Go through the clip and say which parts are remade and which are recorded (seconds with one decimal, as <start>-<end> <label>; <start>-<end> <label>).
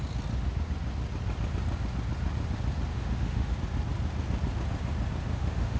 0.0-2.9 recorded; 2.9-3.5 remade; 3.5-5.3 recorded; 5.3-5.8 remade